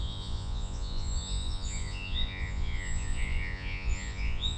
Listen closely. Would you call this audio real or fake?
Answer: fake